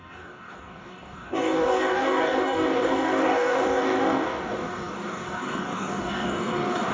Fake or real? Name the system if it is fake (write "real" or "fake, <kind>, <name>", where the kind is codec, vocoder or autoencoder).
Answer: fake, codec, DAC